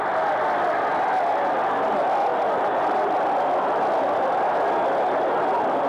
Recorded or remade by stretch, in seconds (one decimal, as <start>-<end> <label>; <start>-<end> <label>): 0.0-5.9 recorded